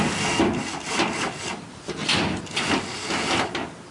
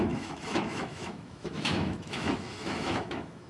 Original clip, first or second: first